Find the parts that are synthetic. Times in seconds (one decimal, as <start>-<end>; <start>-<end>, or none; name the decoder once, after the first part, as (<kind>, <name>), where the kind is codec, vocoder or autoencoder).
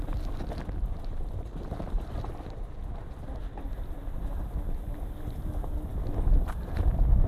none